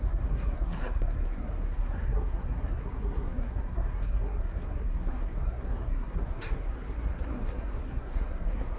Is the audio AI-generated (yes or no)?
yes